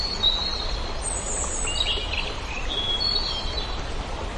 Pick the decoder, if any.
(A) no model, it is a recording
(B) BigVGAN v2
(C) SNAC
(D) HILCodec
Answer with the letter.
A